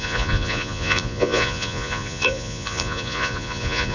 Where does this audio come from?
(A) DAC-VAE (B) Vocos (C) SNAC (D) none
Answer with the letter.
B